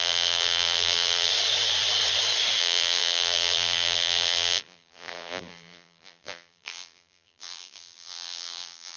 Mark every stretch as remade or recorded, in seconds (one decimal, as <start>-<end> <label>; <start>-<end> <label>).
0.0-1.3 remade; 1.3-2.6 recorded; 2.6-9.0 remade